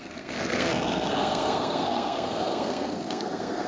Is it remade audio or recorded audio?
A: remade